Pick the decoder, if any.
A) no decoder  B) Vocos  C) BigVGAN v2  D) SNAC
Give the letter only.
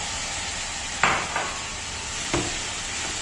A